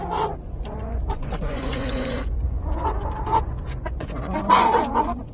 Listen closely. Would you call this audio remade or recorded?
remade